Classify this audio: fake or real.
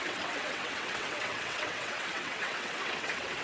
fake